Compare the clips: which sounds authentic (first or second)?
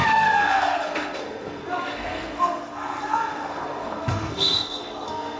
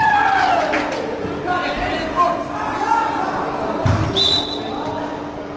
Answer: second